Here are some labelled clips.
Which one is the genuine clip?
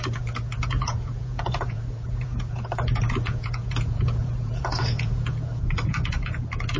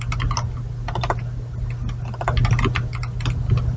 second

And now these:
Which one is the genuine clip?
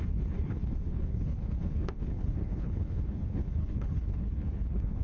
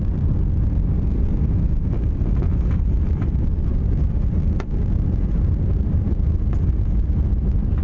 second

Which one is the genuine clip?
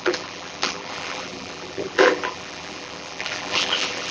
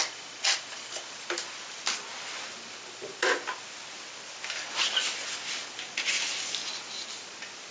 second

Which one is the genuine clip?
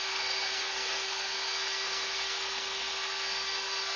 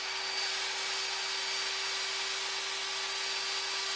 second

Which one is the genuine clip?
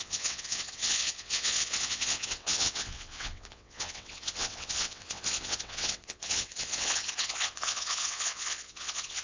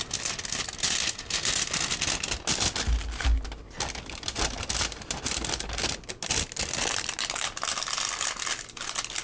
second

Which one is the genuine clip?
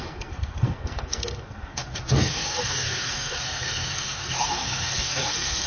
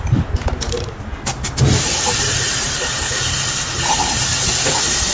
second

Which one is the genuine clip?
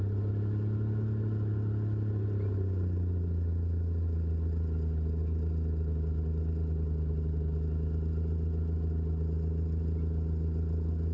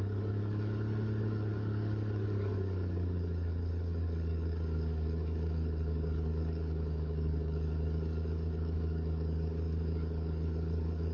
first